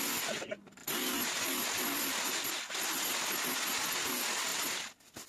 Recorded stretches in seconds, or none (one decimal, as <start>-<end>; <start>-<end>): 0.0-5.3